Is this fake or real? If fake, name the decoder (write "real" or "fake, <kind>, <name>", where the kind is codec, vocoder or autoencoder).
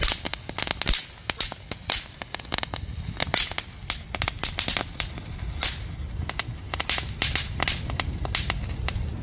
real